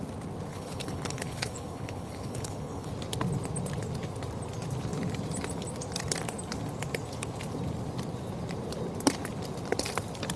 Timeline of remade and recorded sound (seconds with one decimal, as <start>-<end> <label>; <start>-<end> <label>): 0.0-0.5 recorded; 0.5-2.9 remade; 2.9-10.4 recorded